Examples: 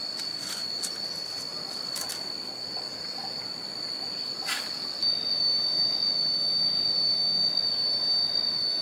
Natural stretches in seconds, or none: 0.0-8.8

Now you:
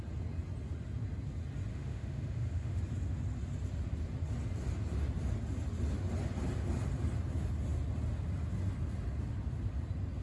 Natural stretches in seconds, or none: 0.0-1.7; 2.8-10.2

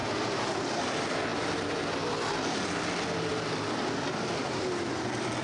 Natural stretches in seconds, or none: 1.3-3.7

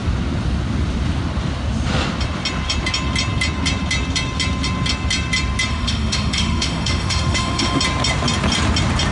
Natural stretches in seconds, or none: 0.0-5.7; 7.8-9.1

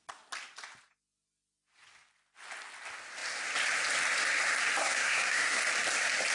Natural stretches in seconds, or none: 0.0-4.8; 5.6-6.3

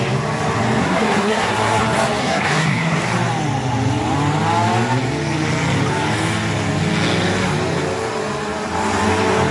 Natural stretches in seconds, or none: 0.0-0.8; 1.8-2.2; 3.0-9.5

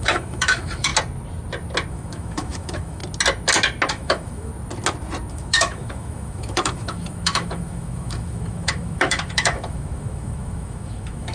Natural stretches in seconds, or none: 0.9-1.9; 3.0-3.9; 4.5-5.3